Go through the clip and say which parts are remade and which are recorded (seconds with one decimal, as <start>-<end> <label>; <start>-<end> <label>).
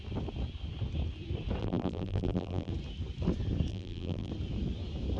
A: 0.0-1.6 recorded; 1.6-2.7 remade; 2.7-3.7 recorded; 3.7-4.3 remade; 4.3-5.2 recorded